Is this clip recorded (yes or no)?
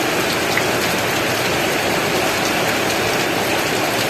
yes